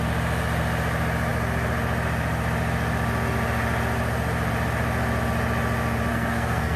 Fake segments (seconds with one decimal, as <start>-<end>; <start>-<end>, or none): 6.1-6.8